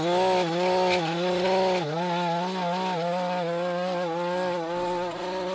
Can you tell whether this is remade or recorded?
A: recorded